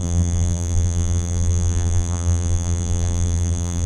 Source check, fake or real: fake